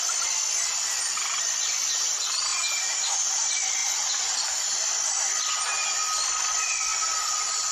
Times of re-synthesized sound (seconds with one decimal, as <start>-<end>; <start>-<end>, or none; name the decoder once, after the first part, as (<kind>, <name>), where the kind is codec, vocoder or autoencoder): none